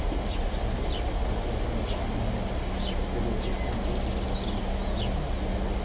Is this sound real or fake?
real